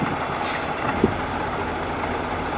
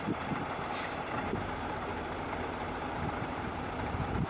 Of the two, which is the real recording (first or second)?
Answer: first